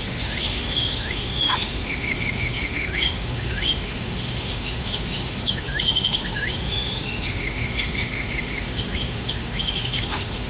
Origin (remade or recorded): remade